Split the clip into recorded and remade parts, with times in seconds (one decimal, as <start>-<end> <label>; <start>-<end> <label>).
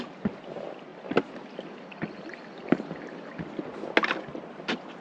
0.0-5.0 recorded